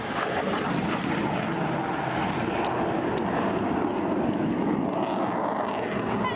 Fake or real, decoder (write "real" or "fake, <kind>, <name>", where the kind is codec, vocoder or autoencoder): real